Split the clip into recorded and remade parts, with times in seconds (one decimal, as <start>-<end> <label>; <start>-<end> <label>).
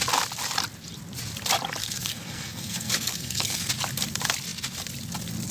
0.0-1.8 recorded; 1.8-3.7 remade; 3.7-5.5 recorded